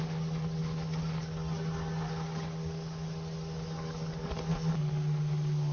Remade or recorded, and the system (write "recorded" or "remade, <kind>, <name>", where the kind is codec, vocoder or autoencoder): recorded